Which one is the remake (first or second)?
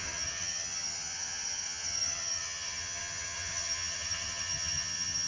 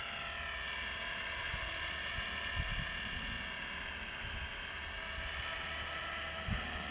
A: first